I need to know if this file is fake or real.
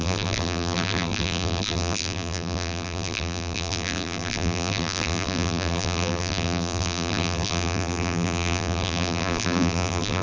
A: fake